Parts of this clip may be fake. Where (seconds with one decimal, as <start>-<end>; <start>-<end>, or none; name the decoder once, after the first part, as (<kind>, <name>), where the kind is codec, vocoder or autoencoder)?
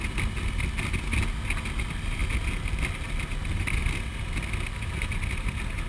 none